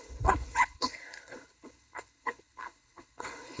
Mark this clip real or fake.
fake